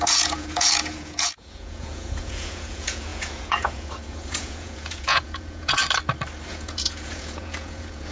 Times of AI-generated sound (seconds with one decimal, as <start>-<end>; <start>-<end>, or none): 0.0-5.8; 6.5-8.1

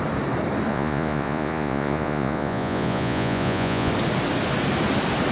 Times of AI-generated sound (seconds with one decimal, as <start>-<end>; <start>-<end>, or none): 0.7-3.9

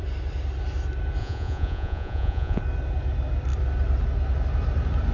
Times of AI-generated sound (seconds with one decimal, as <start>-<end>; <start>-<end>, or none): 1.2-2.6

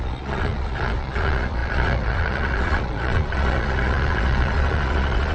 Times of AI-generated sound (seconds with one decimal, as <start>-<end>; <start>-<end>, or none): 0.0-5.3

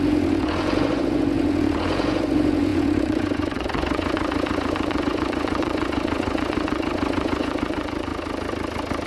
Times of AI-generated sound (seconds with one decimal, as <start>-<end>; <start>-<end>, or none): 0.0-8.1

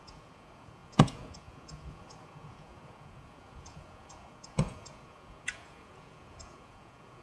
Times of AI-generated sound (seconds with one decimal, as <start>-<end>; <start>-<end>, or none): 0.0-7.2

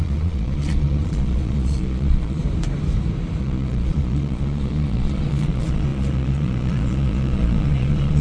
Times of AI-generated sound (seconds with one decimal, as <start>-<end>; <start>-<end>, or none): 0.0-2.4; 3.4-8.2